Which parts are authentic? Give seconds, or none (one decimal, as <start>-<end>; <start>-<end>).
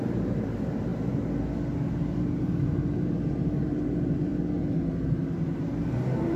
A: 0.9-2.2; 4.3-5.6